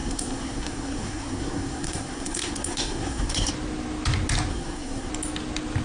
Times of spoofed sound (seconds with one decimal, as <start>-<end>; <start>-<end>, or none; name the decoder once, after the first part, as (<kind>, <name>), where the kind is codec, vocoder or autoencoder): 0.0-3.5 (codec, SNAC); 4.5-5.1